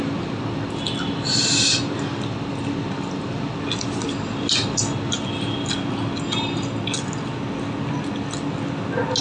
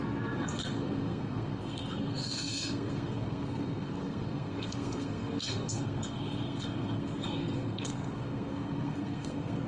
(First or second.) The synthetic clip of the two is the second